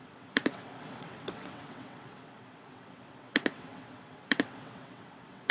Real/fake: fake